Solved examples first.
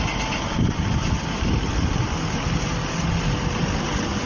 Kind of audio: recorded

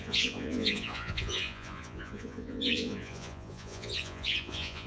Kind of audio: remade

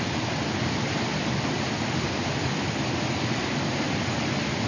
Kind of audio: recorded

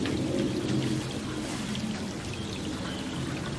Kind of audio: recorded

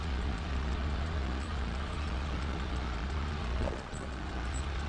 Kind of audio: remade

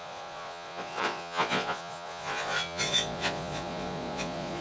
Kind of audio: remade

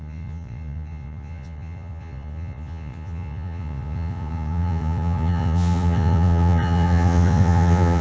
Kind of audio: remade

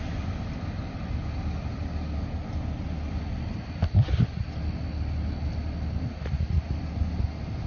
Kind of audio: recorded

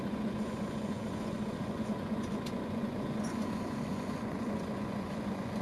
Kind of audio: remade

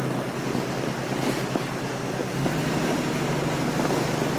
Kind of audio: recorded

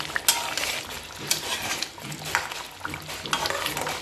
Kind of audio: recorded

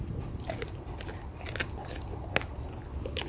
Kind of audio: recorded